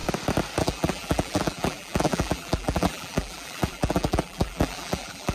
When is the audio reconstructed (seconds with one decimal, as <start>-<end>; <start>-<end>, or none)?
0.6-5.3